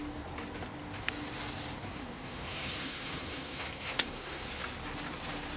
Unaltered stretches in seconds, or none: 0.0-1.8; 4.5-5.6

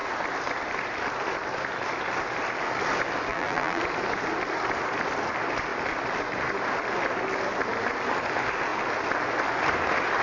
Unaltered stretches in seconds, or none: 0.0-3.3; 3.8-10.2

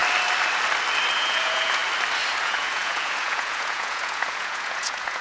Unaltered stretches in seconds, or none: 0.0-1.1; 1.8-2.4